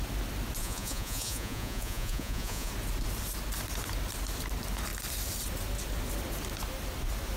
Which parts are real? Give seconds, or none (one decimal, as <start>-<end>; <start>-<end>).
0.0-0.6; 2.7-7.4